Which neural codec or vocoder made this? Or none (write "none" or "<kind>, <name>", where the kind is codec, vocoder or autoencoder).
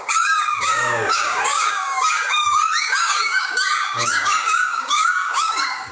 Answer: codec, DAC